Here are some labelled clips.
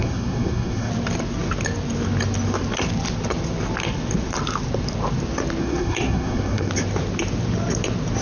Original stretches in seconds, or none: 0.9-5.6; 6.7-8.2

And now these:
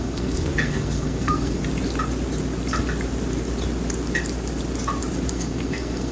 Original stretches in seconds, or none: 1.6-5.3